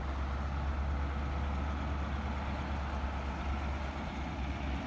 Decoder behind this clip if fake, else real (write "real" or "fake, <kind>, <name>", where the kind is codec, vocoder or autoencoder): real